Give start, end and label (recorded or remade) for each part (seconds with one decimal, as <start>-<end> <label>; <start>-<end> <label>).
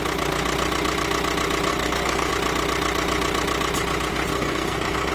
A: 0.0-1.7 recorded; 1.7-2.3 remade; 2.3-4.1 recorded; 4.1-5.1 remade